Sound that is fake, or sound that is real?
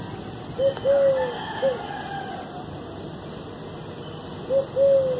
real